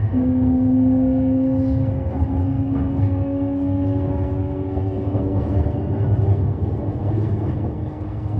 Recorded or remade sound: remade